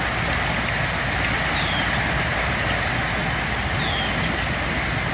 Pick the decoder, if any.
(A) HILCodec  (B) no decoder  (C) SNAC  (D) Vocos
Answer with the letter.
B